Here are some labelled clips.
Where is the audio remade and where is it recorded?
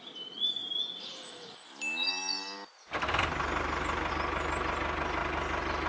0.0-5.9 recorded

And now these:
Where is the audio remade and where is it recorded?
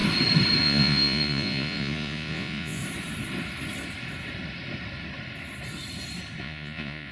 0.0-0.6 recorded; 0.6-2.8 remade; 2.8-6.4 recorded; 6.4-7.1 remade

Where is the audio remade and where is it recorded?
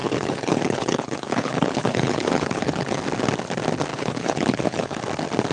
0.0-3.0 remade; 3.0-3.9 recorded; 3.9-5.0 remade; 5.0-5.5 recorded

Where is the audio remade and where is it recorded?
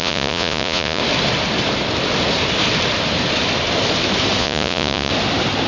0.0-1.0 remade; 1.0-4.4 recorded; 4.4-5.1 remade; 5.1-5.7 recorded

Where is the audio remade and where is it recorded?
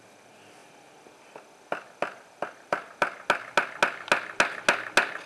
0.0-5.3 recorded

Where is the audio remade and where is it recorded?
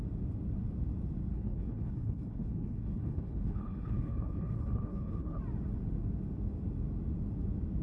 0.0-1.3 recorded; 1.3-5.4 remade; 5.4-7.8 recorded